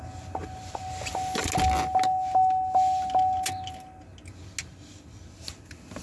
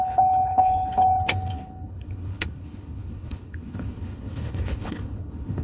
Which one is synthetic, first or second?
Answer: second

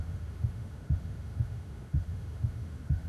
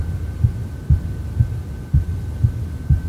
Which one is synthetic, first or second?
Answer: first